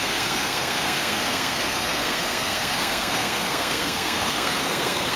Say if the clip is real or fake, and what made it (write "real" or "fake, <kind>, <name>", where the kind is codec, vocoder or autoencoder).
fake, codec, SNAC